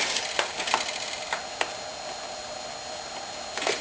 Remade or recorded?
recorded